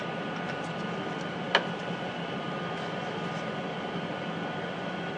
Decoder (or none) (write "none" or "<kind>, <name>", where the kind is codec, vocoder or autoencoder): none